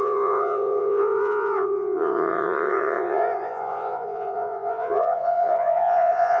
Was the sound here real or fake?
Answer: fake